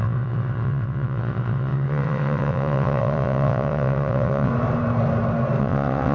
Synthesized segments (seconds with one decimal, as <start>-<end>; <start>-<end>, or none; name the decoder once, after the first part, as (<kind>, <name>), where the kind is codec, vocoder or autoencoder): 0.0-4.5 (vocoder, WaveNeXt); 5.6-6.1